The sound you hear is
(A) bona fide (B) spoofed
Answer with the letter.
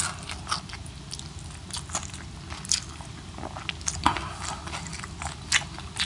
A